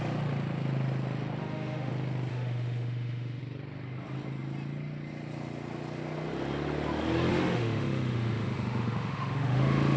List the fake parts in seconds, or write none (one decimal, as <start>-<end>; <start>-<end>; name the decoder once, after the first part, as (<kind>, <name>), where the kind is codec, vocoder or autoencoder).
1.4-1.9 (autoencoder, DAC-VAE); 2.3-3.4; 7.3-10.0